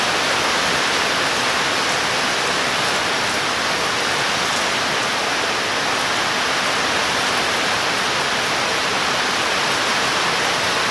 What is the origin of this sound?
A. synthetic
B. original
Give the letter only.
B